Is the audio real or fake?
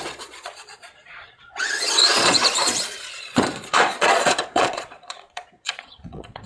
fake